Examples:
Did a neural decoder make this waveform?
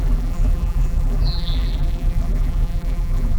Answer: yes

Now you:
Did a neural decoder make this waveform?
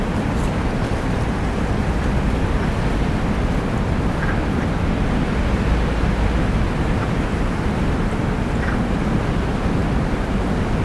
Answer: no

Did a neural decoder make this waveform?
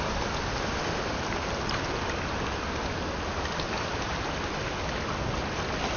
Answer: no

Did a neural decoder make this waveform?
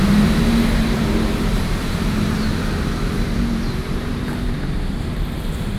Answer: yes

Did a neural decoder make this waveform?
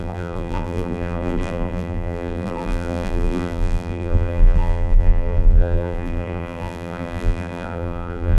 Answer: yes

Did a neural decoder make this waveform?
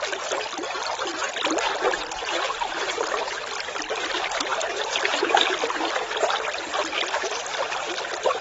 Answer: no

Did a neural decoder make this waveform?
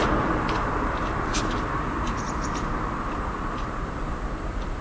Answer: yes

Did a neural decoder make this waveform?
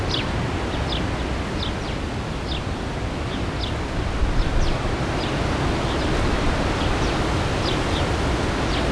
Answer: no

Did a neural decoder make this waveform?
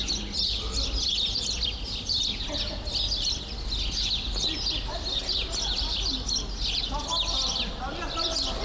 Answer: no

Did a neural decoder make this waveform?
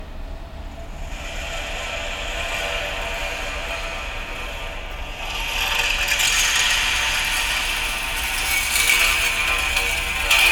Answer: no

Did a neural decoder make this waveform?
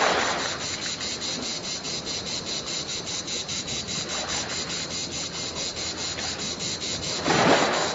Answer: no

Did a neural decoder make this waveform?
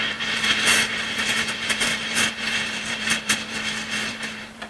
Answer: yes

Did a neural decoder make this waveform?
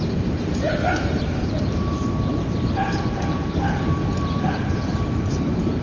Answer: yes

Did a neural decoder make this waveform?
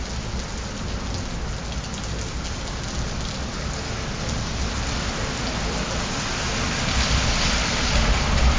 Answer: no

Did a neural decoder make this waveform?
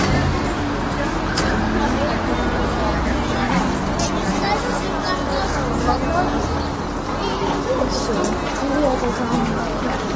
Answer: no